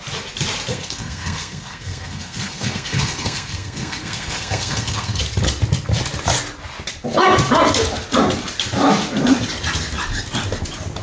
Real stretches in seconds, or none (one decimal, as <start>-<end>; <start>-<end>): 0.0-0.7; 5.2-11.0